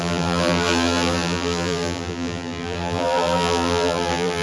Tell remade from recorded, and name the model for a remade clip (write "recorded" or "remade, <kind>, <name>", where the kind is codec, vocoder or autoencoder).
remade, vocoder, BigVGAN v2